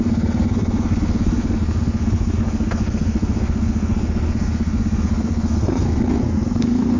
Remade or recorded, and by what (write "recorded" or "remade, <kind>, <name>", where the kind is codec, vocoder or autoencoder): remade, codec, SNAC